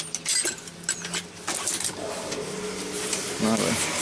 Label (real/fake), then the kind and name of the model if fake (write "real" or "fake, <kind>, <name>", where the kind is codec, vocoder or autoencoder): real